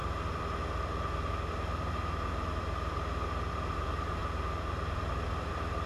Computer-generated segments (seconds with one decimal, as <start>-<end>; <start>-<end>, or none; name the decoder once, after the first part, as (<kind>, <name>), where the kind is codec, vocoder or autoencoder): 3.5-4.2 (vocoder, BigVGAN v2); 4.7-5.9

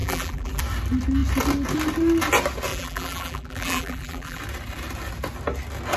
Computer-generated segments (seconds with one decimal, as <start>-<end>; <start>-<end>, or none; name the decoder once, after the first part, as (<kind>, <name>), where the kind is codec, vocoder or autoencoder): 0.0-0.6 (vocoder, BigVGAN v2); 2.7-4.4

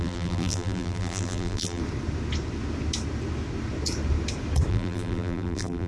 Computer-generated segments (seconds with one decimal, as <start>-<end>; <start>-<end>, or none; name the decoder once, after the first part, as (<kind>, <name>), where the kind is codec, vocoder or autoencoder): 0.0-1.8 (vocoder, BigVGAN v2); 4.7-5.9

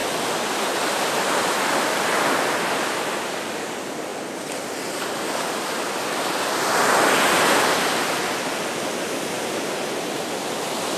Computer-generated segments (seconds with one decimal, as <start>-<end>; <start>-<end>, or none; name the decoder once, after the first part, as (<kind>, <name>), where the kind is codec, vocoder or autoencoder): 0.6-4.1 (vocoder, BigVGAN v2); 9.3-11.0

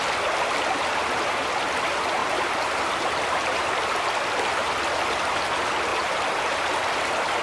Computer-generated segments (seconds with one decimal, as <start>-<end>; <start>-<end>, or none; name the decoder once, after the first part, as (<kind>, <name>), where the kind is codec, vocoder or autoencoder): 2.2-3.7 (vocoder, BigVGAN v2); 5.9-6.8

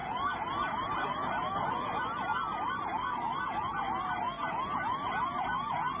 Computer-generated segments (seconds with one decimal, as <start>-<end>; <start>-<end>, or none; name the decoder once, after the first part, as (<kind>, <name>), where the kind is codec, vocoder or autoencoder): 1.7-2.3 (vocoder, BigVGAN v2)